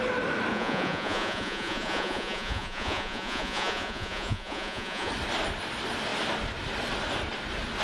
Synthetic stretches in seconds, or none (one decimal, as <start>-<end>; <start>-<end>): 0.5-5.1